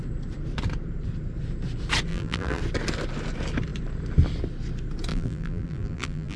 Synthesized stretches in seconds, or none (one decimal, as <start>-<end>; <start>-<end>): 2.1-2.6; 5.1-6.4